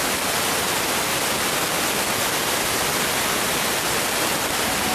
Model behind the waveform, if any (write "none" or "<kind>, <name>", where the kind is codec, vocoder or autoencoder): none